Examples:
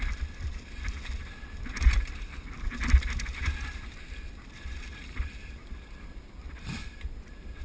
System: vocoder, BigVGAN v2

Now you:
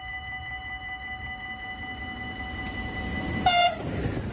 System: none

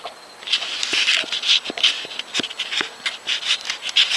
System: none